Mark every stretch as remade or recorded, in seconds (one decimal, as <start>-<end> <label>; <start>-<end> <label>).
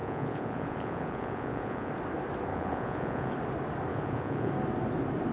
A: 0.0-1.9 remade; 1.9-2.5 recorded; 2.5-3.3 remade; 3.3-3.9 recorded; 3.9-4.5 remade; 4.5-5.3 recorded